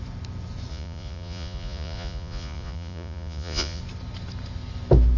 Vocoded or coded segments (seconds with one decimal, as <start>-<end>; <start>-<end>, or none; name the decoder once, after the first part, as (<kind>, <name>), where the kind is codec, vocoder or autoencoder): 0.7-3.8 (vocoder, Vocos)